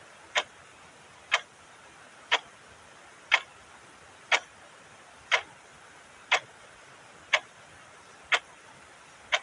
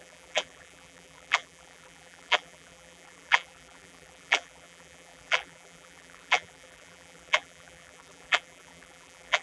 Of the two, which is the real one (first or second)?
first